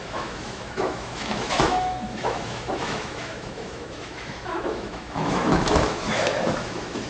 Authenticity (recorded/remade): remade